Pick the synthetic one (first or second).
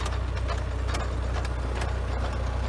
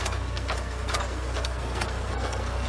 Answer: second